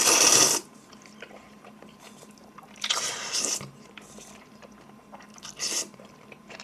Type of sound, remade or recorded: remade